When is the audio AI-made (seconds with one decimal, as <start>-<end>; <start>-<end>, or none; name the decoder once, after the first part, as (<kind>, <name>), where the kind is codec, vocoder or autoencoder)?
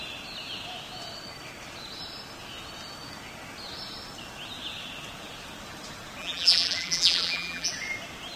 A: 6.2-7.7 (vocoder, BigVGAN v2)